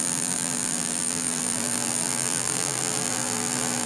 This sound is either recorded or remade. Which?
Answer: remade